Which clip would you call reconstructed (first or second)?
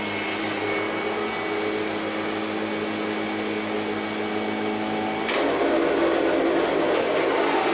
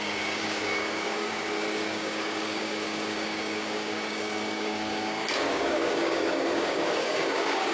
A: second